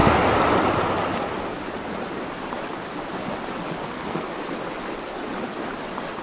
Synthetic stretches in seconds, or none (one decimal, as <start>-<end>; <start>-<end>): 3.8-4.3

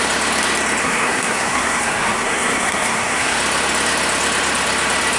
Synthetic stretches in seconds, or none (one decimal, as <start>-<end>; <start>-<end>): 0.8-3.4

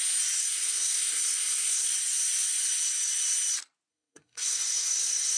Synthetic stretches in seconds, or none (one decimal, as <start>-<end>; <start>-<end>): 0.4-1.9; 3.9-5.4

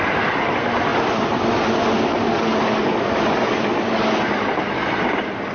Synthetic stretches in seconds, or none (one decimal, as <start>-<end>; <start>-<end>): none

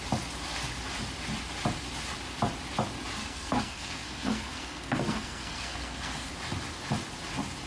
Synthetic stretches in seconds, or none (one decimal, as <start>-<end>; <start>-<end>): 3.2-6.3

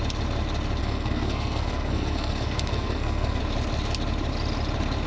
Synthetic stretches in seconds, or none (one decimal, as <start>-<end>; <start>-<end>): 0.8-3.4